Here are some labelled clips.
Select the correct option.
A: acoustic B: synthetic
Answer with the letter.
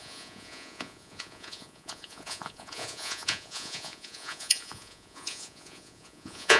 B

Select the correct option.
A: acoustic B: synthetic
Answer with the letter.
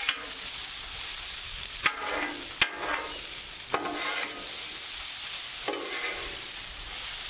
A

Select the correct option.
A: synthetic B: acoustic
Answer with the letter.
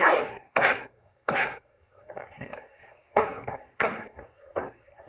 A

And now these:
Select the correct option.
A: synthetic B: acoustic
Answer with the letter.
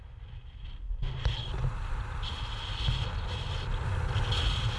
B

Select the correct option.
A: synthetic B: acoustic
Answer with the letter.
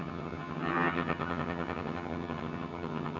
A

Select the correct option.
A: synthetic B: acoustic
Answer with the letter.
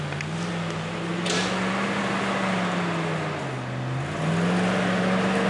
B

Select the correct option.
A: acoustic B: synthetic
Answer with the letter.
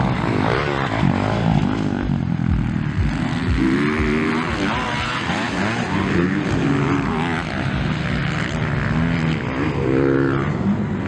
A